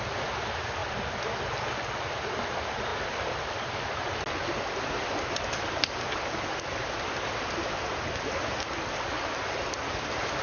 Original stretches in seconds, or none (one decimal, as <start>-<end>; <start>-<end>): 0.0-10.4